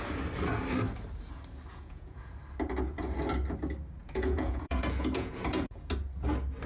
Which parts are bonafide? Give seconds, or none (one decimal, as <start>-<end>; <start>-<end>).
0.0-1.7; 2.3-4.0; 5.9-6.7